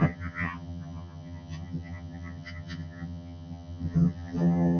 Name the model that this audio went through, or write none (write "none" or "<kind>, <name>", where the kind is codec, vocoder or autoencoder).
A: vocoder, HiFi-GAN